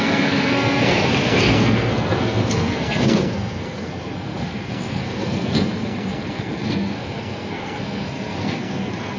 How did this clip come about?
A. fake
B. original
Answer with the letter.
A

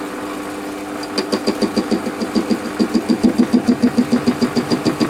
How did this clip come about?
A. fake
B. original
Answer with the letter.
B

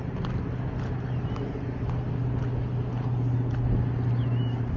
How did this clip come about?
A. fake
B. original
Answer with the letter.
B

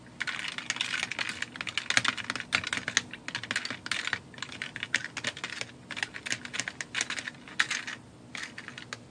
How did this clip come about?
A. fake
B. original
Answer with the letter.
B